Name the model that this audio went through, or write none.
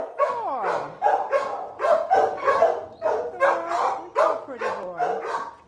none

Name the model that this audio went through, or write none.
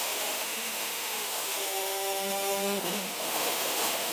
autoencoder, DAC-VAE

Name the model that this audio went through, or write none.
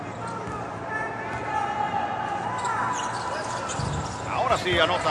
none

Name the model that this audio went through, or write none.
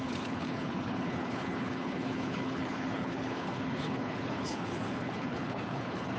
codec, HILCodec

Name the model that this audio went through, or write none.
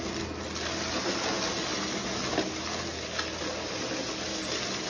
none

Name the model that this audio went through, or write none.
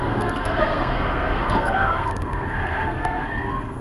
codec, SNAC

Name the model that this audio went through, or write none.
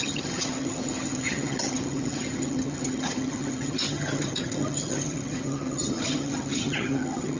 vocoder, HiFi-GAN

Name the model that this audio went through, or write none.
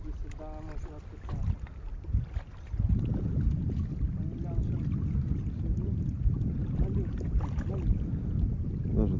none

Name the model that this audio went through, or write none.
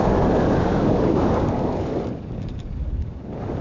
codec, DAC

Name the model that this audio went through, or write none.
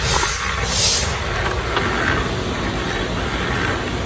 none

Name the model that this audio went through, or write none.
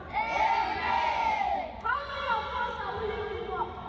vocoder, Vocos